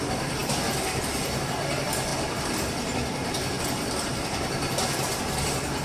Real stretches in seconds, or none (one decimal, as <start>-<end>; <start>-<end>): 0.0-0.4; 1.0-5.8

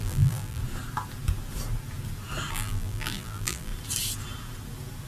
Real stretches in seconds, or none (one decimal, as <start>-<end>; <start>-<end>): 0.6-2.5; 3.7-5.1

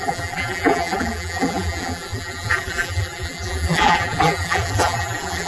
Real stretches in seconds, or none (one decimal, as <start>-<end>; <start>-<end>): none

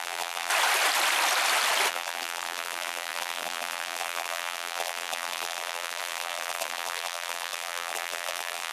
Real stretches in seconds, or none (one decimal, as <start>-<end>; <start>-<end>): 0.5-1.9

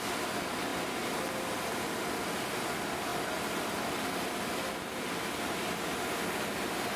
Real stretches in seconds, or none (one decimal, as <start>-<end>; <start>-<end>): 0.0-0.7; 1.8-3.1; 4.6-7.0